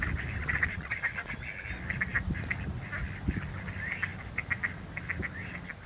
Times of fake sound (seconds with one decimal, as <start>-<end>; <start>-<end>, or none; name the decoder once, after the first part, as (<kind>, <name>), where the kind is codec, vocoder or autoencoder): 0.4-0.9 (vocoder, Vocos)

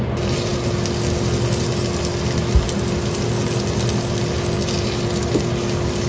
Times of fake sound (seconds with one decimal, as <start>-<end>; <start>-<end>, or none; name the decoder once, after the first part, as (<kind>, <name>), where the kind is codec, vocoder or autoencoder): none

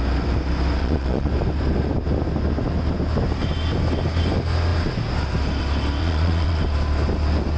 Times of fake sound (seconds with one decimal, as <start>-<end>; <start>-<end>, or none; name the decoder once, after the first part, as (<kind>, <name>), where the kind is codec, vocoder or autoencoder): 0.8-1.3 (vocoder, Vocos); 6.0-6.6